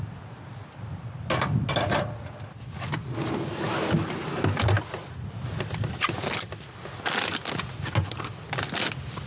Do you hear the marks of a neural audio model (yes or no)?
no